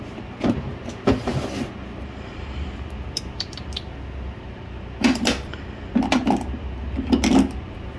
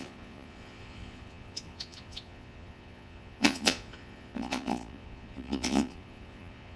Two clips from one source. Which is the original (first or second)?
first